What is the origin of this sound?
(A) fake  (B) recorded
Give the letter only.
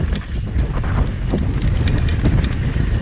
B